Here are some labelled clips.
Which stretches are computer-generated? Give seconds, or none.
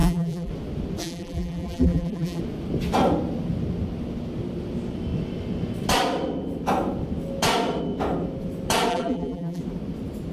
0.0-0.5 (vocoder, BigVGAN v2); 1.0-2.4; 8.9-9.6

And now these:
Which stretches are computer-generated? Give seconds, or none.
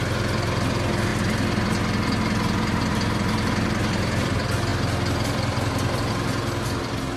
none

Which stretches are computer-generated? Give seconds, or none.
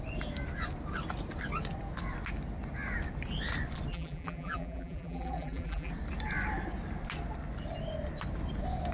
3.9-5.9 (vocoder, BigVGAN v2)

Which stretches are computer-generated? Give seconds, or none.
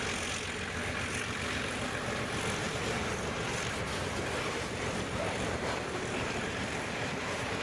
2.6-7.6 (vocoder, BigVGAN v2)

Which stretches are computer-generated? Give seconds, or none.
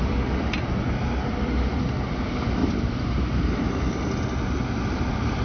2.6-3.7 (vocoder, BigVGAN v2)